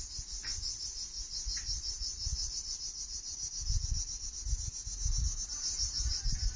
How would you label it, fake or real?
real